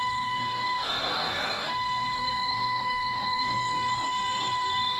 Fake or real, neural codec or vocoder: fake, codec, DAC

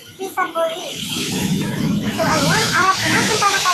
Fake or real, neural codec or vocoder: fake, autoencoder, DAC-VAE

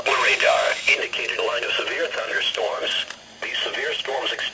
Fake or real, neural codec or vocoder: fake, vocoder, Vocos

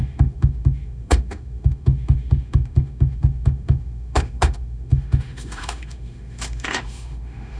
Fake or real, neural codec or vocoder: fake, autoencoder, DAC-VAE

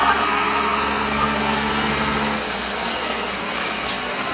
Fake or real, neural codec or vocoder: fake, codec, SNAC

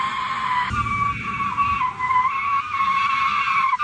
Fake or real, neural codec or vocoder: real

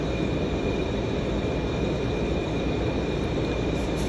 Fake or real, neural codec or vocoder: real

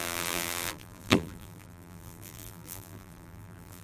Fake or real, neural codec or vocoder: fake, vocoder, BigVGAN v2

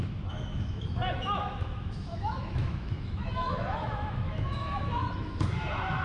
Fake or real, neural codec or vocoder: fake, autoencoder, DAC-VAE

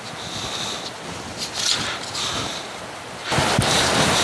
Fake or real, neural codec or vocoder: real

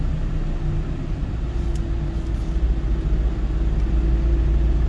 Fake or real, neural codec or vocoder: real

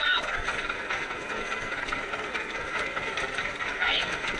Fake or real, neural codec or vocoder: fake, codec, SNAC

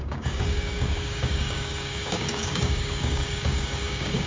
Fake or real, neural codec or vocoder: fake, codec, DAC